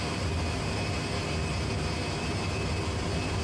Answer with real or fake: real